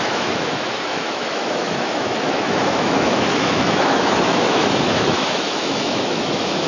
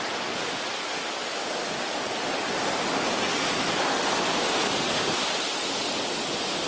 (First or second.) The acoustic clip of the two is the second